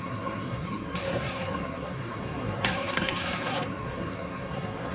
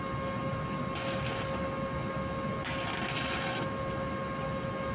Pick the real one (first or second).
second